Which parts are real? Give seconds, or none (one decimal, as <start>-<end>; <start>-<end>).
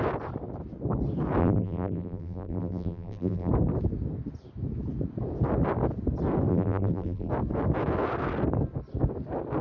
0.0-1.4; 3.5-6.5; 7.3-9.6